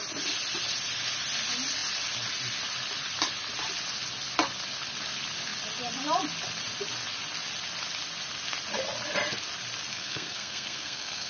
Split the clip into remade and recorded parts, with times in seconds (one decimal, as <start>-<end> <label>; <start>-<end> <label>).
0.0-9.9 recorded; 9.9-11.3 remade